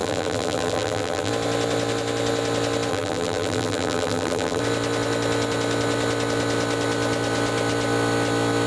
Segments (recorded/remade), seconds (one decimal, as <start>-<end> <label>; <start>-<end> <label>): 0.0-1.3 remade; 1.3-2.9 recorded; 2.9-4.6 remade; 4.6-8.7 recorded